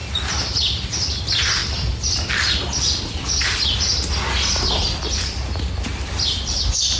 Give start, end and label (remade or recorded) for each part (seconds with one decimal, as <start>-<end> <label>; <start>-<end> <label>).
0.0-7.0 recorded